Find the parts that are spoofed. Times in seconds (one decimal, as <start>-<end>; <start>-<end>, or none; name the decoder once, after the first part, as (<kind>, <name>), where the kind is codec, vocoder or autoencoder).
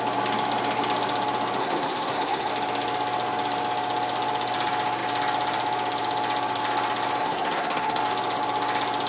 1.6-2.5 (codec, SNAC); 7.2-8.0